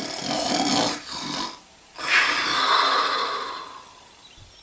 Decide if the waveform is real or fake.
real